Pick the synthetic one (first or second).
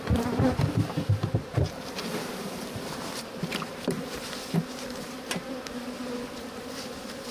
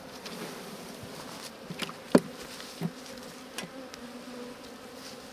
first